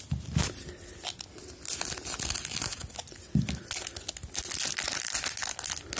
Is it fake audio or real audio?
real